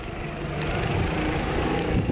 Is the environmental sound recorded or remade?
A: recorded